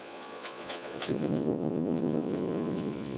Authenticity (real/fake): fake